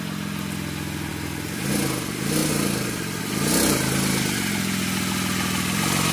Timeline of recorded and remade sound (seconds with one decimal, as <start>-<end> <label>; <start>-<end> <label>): 0.0-2.4 recorded; 2.4-3.2 remade; 3.2-6.1 recorded